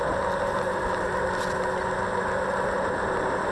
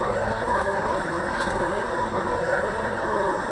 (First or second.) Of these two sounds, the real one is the first